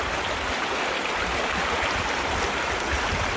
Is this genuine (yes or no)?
yes